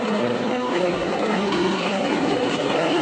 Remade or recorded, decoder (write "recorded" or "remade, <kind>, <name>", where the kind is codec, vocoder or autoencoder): remade, codec, SNAC